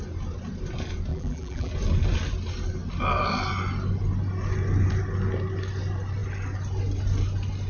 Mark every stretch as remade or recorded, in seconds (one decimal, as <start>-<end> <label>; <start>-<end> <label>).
0.0-1.1 recorded; 1.1-1.7 remade; 1.7-7.7 recorded